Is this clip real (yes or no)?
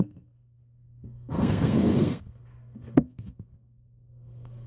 no